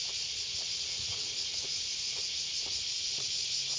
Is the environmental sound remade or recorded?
remade